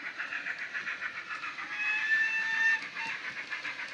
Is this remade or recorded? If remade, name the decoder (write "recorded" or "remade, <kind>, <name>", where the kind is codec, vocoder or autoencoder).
remade, vocoder, BigVGAN v2